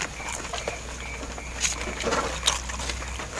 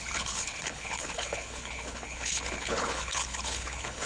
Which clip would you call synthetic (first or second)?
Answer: second